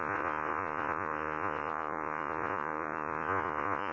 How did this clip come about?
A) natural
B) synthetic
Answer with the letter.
B